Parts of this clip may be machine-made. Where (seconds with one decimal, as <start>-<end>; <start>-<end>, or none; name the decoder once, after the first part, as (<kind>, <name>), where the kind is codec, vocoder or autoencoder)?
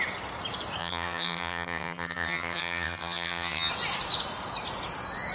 0.8-3.7 (vocoder, HiFi-GAN)